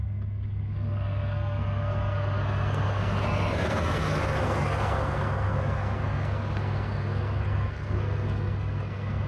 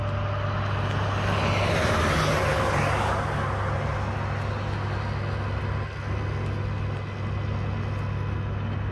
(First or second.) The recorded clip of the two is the second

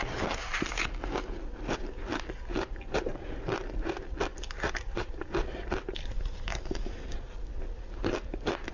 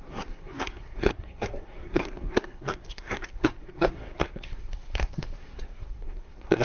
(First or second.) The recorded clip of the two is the first